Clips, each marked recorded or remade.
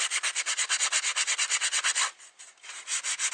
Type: recorded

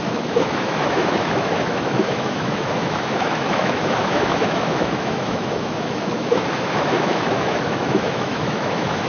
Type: remade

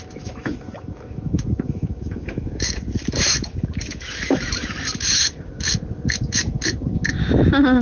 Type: remade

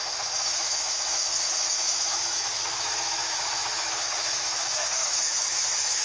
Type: remade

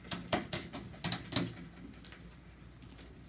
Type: recorded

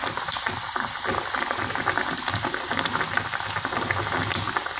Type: recorded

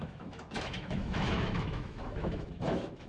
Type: remade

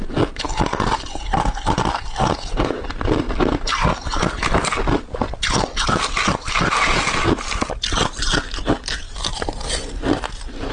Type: recorded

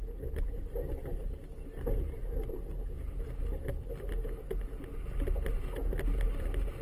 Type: recorded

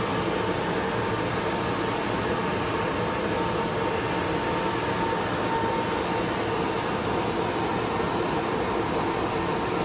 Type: recorded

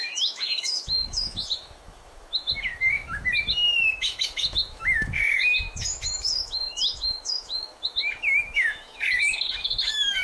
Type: remade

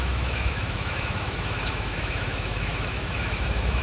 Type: remade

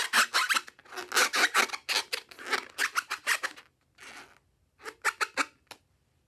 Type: recorded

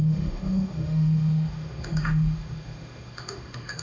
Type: remade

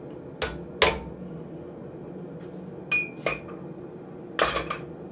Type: recorded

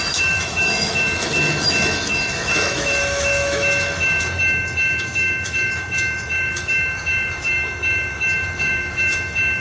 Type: remade